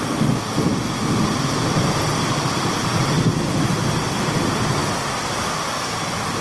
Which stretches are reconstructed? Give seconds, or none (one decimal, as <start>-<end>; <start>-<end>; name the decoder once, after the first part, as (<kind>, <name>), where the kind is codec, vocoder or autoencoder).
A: 0.0-4.8 (vocoder, BigVGAN v2); 5.9-6.4